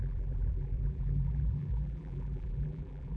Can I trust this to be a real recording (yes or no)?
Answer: no